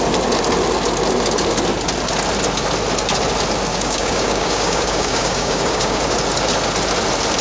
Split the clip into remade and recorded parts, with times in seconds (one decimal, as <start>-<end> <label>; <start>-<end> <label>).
0.0-3.7 recorded; 3.7-6.0 remade; 6.0-7.4 recorded